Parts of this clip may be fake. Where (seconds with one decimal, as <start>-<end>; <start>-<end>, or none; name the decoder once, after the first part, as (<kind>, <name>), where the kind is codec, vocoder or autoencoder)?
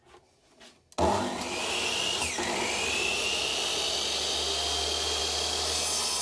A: none